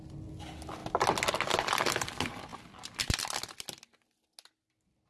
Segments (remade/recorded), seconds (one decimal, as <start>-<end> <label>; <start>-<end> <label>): 0.0-5.1 recorded